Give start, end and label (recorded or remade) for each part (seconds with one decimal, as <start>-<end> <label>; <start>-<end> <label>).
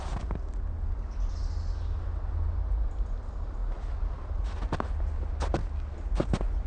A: 0.0-6.7 recorded